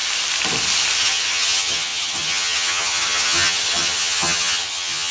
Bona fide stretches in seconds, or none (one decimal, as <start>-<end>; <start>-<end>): 0.0-1.0